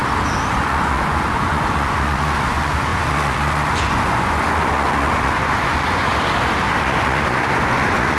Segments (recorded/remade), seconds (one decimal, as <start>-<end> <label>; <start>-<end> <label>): 0.0-0.5 recorded; 0.5-6.1 remade; 6.1-6.8 recorded; 6.8-8.2 remade